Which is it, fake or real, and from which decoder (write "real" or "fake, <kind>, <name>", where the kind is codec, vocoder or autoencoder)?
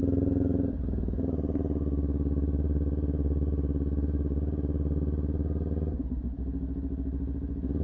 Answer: real